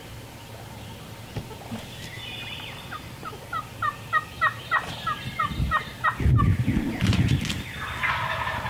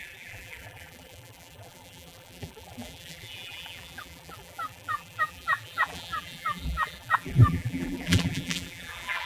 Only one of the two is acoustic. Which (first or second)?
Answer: first